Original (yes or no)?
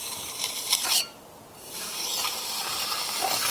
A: no